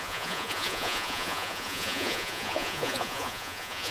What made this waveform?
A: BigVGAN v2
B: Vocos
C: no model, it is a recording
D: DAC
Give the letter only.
B